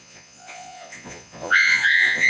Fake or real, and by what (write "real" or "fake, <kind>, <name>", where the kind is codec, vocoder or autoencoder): fake, vocoder, Vocos